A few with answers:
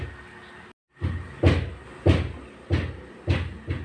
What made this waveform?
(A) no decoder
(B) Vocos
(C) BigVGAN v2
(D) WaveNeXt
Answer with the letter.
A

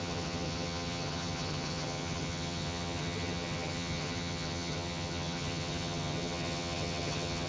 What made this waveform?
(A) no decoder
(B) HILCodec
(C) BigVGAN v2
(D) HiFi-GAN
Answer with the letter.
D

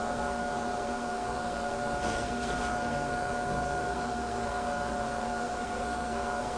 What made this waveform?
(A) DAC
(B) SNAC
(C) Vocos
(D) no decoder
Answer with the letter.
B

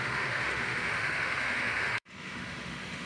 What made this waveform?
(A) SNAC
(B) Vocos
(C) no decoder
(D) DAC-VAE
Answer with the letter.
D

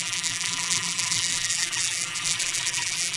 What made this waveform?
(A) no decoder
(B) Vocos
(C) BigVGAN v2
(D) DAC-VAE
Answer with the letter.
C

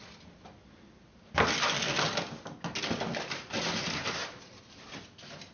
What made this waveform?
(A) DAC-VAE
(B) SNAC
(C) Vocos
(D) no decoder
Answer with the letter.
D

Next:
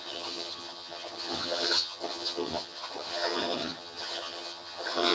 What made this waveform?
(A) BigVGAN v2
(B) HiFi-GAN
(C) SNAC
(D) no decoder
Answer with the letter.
B